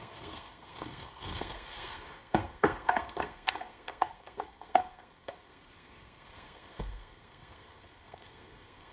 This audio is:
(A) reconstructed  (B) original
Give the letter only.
A